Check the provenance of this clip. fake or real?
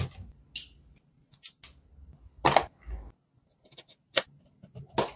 real